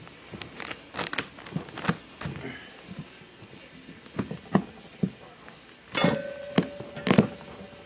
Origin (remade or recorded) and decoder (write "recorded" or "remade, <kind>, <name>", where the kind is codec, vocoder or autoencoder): recorded